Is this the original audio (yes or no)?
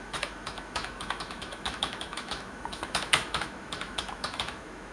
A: no